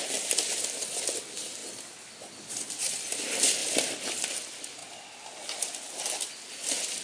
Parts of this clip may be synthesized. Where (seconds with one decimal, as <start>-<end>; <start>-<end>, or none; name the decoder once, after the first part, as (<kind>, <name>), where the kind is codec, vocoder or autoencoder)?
none